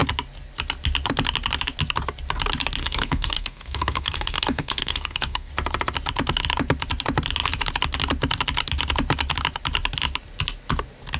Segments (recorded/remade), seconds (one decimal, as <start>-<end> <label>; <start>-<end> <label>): 0.0-2.8 recorded; 2.8-5.5 remade; 5.5-11.2 recorded